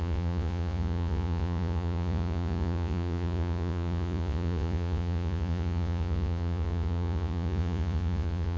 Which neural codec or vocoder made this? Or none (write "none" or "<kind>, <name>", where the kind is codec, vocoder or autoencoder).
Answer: vocoder, Vocos